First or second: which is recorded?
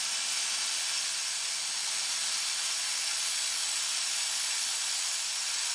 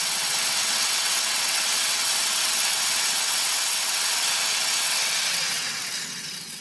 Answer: first